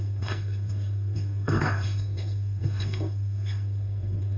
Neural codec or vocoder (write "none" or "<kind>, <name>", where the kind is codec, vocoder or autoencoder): codec, SNAC